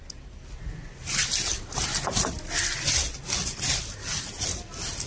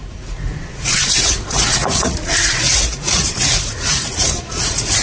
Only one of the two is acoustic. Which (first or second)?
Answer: first